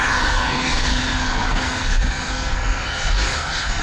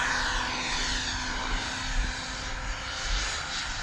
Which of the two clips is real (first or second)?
second